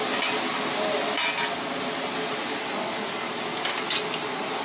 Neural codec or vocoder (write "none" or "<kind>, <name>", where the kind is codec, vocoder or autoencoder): none